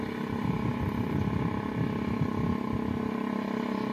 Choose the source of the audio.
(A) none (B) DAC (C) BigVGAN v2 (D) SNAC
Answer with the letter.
A